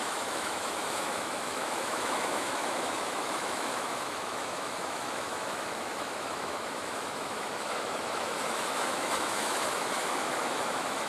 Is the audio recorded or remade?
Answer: remade